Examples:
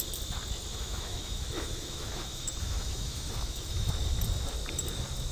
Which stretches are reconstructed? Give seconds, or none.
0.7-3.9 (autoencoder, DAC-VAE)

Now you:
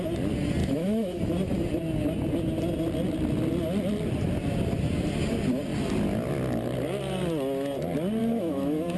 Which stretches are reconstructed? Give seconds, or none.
0.6-1.2 (autoencoder, DAC-VAE); 8.2-9.0

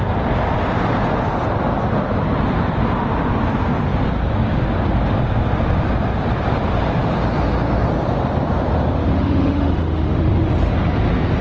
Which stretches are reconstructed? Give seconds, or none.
9.1-10.3 (autoencoder, DAC-VAE)

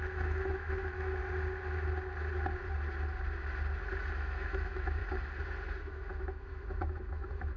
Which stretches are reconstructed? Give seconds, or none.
0.0-1.2 (autoencoder, DAC-VAE); 4.1-5.0; 5.8-7.6